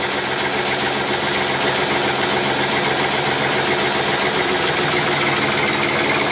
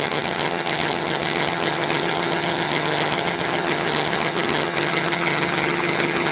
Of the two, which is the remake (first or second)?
second